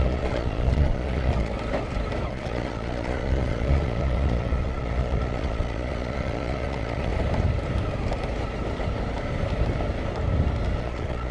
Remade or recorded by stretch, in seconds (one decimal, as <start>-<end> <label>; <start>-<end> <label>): 0.0-1.5 remade; 1.5-2.3 recorded; 2.3-7.1 remade; 7.1-10.8 recorded; 10.8-11.3 remade